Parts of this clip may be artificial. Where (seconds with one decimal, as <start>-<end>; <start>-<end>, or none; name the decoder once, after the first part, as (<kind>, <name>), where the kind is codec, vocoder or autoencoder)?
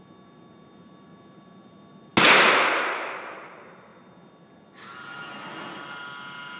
none